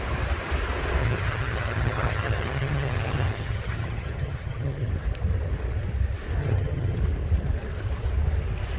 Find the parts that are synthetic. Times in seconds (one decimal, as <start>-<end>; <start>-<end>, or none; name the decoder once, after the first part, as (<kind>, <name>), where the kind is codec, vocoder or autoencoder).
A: 1.0-4.9 (vocoder, HiFi-GAN); 6.4-7.0